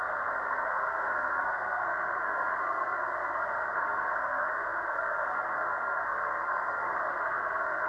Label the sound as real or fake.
fake